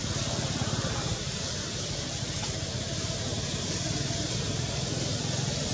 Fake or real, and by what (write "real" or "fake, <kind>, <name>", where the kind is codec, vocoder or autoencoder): real